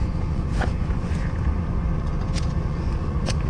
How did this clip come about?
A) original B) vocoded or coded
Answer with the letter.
B